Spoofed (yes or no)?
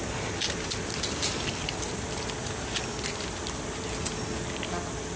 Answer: no